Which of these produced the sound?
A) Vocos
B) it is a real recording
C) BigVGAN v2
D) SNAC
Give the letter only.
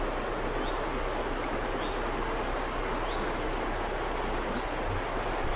B